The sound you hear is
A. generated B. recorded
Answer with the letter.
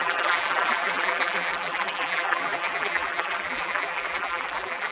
A